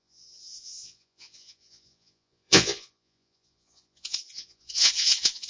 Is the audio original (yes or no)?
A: no